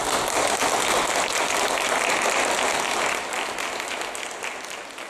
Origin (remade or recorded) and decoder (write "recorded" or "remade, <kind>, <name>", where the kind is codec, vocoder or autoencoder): recorded